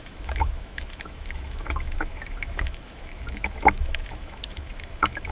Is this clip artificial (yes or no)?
yes